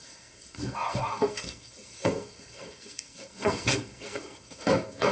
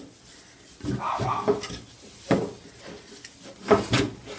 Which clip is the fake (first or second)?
first